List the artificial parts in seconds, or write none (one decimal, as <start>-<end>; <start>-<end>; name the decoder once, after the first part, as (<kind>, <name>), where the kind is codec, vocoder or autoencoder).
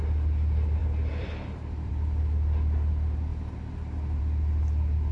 0.8-1.9 (vocoder, BigVGAN v2)